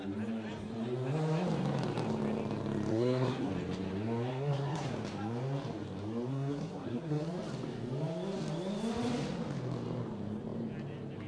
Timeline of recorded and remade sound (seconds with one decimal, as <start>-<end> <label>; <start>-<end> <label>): 0.0-2.9 recorded; 2.9-3.5 remade; 3.5-4.3 recorded; 4.3-4.9 remade; 4.9-6.3 recorded; 6.3-7.3 remade; 7.3-11.3 recorded